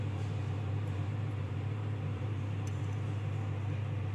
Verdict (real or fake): fake